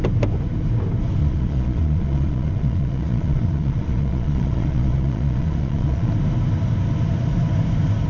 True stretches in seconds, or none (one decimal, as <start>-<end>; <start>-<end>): 0.0-1.2; 6.1-8.1